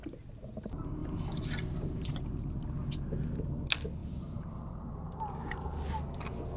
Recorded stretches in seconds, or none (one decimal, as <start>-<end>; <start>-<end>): 0.0-1.0; 2.5-4.0; 5.2-6.6